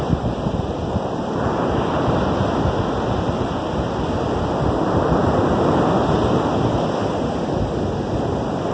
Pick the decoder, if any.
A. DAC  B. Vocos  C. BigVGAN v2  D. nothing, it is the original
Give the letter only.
D